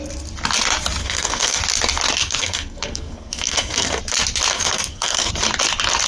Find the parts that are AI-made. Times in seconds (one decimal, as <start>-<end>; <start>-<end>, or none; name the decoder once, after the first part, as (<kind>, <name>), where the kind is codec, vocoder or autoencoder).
1.0-1.6 (codec, SNAC); 2.2-4.0; 4.5-5.3

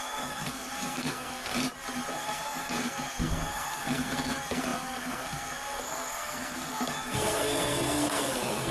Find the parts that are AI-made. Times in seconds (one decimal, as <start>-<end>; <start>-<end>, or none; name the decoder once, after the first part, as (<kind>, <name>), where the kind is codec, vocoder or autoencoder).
0.0-1.5 (codec, SNAC); 2.1-8.7